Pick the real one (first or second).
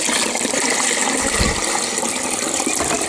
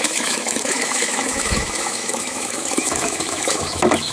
first